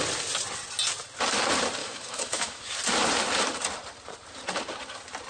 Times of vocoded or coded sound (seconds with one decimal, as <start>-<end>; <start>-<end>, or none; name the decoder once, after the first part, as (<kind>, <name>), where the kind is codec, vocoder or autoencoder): 1.8-2.7 (autoencoder, DAC-VAE)